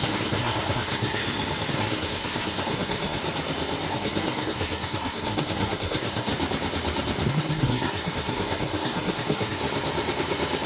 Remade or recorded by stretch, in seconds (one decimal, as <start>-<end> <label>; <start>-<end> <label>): 0.0-1.2 remade; 1.2-1.7 recorded; 1.7-3.2 remade; 3.2-3.9 recorded; 3.9-6.3 remade; 6.3-7.3 recorded; 7.3-9.6 remade; 9.6-10.7 recorded

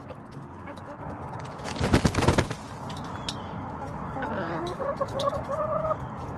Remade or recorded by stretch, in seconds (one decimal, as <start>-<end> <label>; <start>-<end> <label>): 0.0-1.7 remade; 1.7-3.4 recorded; 3.4-6.4 remade

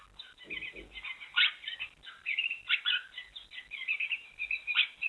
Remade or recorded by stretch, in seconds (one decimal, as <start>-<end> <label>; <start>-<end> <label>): 0.0-5.1 recorded